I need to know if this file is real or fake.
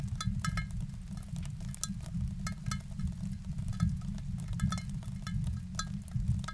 real